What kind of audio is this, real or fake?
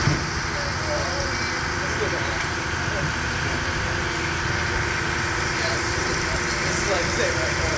real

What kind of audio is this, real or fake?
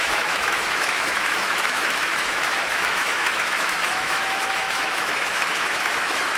fake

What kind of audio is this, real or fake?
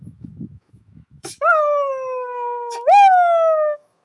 fake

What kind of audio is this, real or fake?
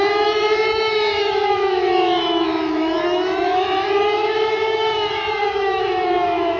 fake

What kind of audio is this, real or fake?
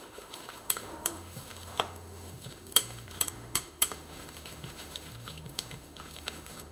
fake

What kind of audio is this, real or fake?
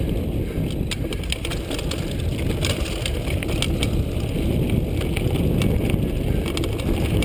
real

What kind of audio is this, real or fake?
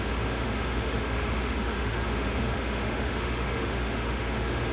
fake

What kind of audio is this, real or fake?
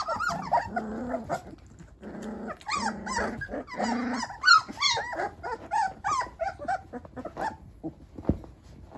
real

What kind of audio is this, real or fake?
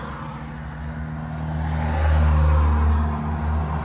real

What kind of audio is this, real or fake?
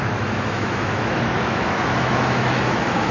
fake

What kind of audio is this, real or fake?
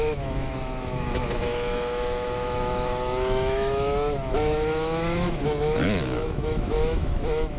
fake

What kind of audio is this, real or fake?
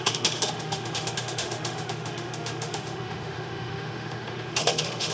fake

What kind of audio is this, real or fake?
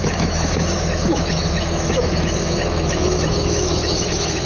fake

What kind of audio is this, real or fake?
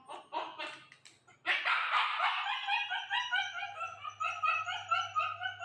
real